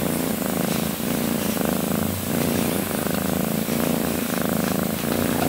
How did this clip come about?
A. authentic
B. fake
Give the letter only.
B